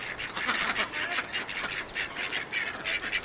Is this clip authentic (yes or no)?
yes